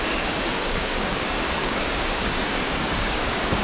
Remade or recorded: remade